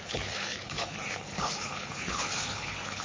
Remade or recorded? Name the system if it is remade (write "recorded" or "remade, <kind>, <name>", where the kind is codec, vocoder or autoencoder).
remade, codec, HILCodec